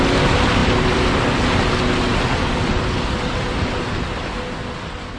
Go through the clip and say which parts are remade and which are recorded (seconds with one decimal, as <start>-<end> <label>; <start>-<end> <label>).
0.0-0.6 recorded; 0.6-1.1 remade; 1.1-2.1 recorded; 2.1-3.5 remade; 3.5-5.2 recorded